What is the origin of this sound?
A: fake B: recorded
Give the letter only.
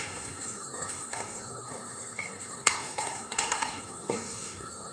A